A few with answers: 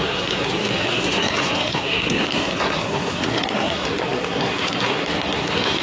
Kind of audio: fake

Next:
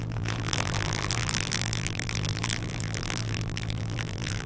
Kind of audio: fake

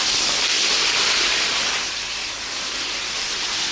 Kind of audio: fake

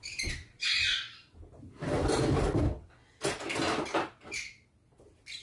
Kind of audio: real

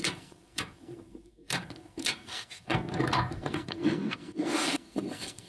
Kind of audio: fake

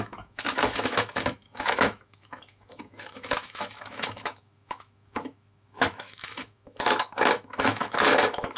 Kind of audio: fake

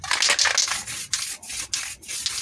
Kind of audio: real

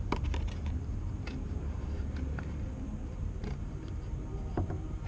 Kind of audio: fake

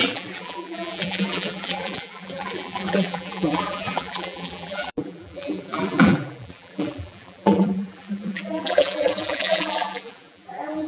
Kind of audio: fake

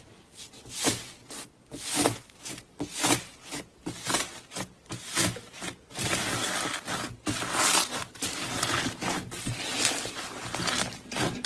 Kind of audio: real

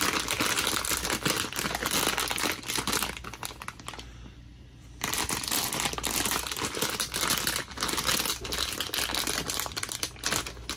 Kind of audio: real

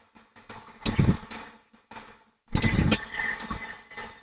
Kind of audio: real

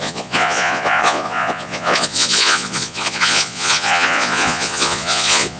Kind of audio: fake